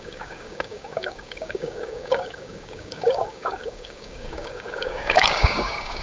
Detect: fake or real fake